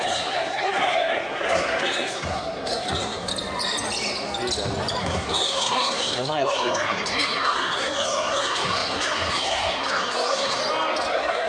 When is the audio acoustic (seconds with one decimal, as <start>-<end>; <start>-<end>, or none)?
3.3-5.0; 10.6-11.1